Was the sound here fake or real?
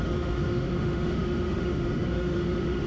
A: fake